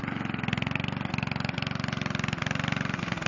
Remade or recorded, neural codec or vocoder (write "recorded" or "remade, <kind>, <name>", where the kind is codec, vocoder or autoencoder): recorded